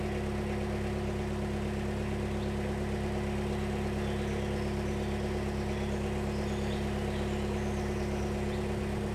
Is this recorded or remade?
recorded